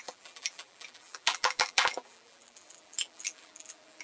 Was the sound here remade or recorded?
remade